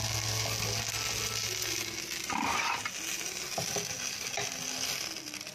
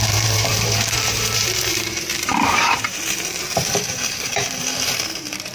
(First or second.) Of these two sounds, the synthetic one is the second